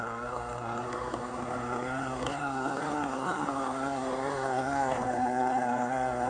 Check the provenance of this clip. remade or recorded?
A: remade